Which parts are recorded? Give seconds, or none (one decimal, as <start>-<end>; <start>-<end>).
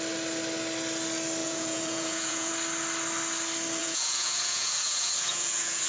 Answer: 0.0-1.4; 2.5-3.8